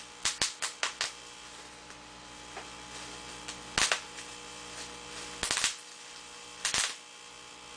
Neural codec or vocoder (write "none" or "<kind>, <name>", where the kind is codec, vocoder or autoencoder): none